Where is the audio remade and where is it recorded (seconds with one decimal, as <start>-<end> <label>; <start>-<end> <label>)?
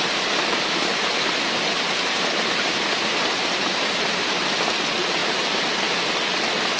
0.0-0.9 recorded; 0.9-4.4 remade; 4.4-5.2 recorded; 5.2-6.1 remade; 6.1-6.8 recorded